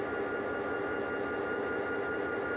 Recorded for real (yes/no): yes